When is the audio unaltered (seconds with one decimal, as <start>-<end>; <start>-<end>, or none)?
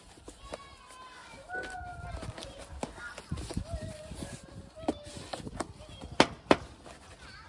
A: 0.0-7.5